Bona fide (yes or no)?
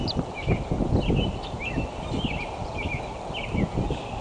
yes